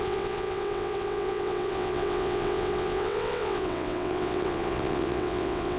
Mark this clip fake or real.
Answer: fake